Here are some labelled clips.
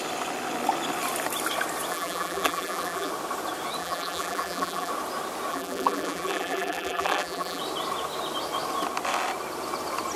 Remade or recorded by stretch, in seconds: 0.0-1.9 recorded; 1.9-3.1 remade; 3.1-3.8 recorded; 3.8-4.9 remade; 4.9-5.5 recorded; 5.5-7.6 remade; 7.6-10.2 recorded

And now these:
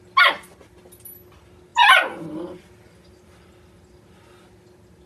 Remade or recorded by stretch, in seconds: 0.0-5.1 recorded

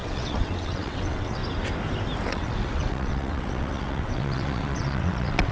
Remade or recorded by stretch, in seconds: 0.0-1.4 remade; 1.4-2.3 recorded; 2.3-5.5 remade

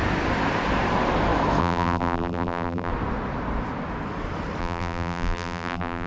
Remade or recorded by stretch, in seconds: 0.0-1.6 recorded; 1.6-2.9 remade; 2.9-4.6 recorded; 4.6-6.1 remade

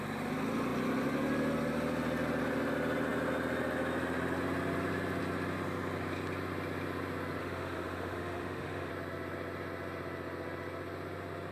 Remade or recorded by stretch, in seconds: 0.0-7.4 recorded; 7.4-8.9 remade; 8.9-11.5 recorded

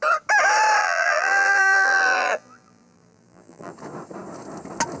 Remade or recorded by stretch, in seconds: 0.0-0.8 recorded; 0.8-3.7 remade; 3.7-5.0 recorded

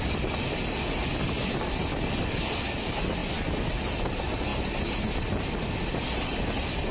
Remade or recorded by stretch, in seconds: 0.0-6.9 recorded

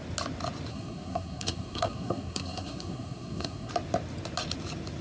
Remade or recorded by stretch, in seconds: 0.0-0.7 recorded; 0.7-3.7 remade; 3.7-5.0 recorded